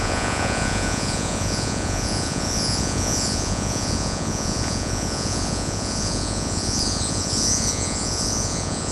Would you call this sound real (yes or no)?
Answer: no